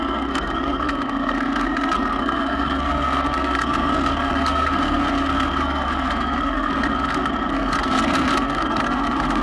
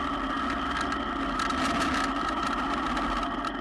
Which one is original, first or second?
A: second